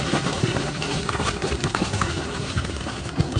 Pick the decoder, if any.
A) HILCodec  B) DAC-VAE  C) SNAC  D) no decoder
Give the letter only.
C